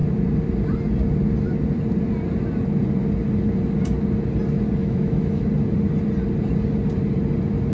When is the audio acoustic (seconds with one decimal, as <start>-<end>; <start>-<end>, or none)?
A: 0.0-4.8; 5.4-7.7